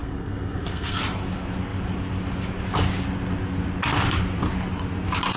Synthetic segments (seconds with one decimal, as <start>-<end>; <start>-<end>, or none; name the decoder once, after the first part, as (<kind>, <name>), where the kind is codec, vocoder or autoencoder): 0.0-1.0 (codec, SNAC)